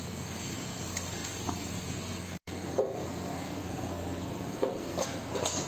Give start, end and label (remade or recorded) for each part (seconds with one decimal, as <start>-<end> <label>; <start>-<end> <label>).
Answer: 0.0-5.7 remade